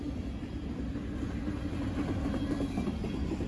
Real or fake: real